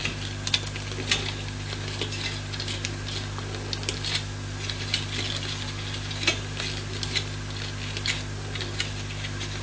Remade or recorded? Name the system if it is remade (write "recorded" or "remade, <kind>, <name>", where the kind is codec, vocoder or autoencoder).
recorded